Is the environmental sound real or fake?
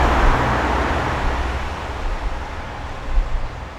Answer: real